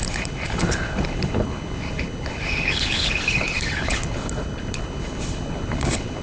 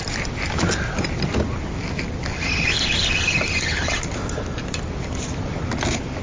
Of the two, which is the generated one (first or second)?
first